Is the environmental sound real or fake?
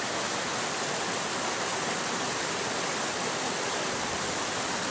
real